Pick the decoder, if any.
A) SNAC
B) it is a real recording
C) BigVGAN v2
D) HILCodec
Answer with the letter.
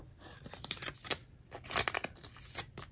B